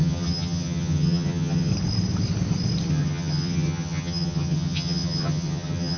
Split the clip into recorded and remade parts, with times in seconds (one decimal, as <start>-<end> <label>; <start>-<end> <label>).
0.0-1.7 remade; 1.7-2.9 recorded; 2.9-6.0 remade